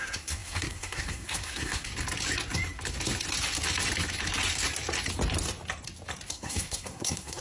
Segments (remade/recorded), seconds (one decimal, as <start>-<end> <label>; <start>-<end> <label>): 0.0-1.9 remade; 1.9-6.3 recorded; 6.3-7.4 remade